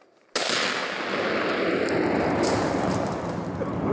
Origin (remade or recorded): recorded